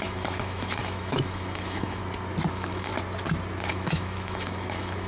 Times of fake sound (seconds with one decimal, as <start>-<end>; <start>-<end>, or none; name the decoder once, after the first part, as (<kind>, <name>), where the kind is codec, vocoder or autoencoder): 0.0-2.0 (autoencoder, DAC-VAE); 2.5-2.9; 3.7-5.1